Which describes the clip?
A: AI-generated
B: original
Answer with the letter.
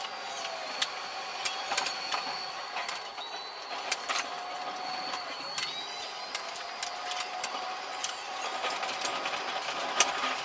B